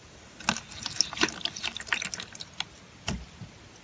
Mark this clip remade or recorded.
recorded